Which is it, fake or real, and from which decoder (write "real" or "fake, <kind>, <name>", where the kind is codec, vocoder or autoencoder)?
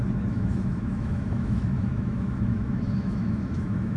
fake, autoencoder, DAC-VAE